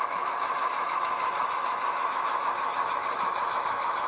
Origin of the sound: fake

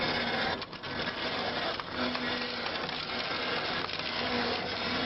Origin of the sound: real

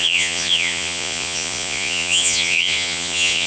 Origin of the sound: fake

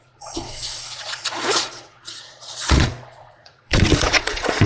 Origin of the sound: fake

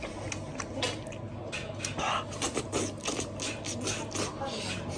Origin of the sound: real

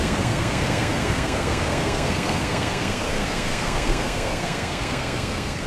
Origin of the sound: fake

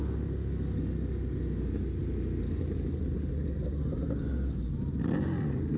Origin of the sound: real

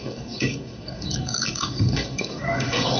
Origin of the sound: fake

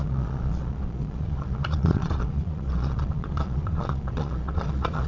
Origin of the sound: fake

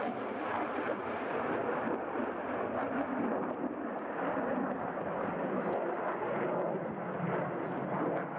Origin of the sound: real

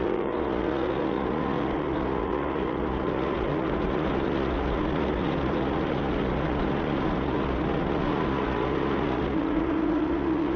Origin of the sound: fake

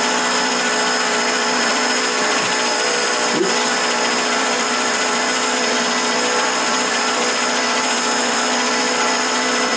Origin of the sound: fake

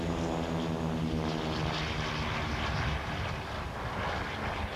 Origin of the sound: real